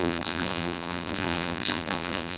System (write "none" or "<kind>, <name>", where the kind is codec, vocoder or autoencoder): vocoder, BigVGAN v2